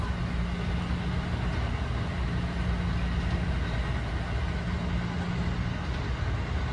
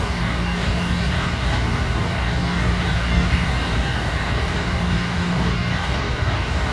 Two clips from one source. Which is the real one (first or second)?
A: first